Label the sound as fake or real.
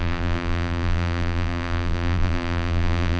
fake